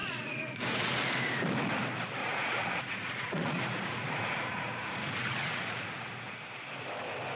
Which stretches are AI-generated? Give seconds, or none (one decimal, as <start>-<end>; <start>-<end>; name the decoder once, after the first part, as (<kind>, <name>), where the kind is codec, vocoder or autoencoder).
0.0-1.0 (vocoder, Vocos); 2.2-6.4